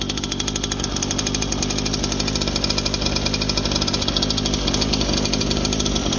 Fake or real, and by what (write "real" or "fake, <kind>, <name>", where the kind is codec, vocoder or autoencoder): real